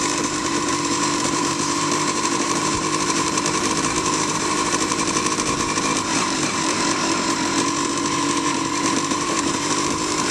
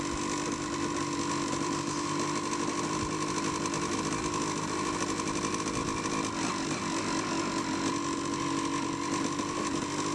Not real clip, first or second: first